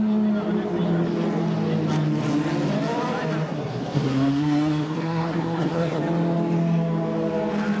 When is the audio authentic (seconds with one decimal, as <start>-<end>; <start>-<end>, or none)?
0.0-3.4; 6.0-7.8